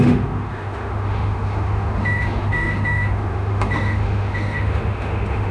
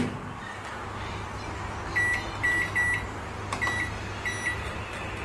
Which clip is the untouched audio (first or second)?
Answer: second